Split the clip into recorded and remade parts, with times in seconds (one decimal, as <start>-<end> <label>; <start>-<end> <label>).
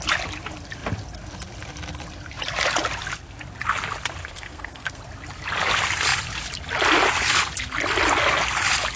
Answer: 0.0-4.2 recorded; 4.2-5.0 remade; 5.0-9.0 recorded